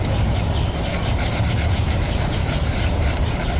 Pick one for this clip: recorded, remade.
recorded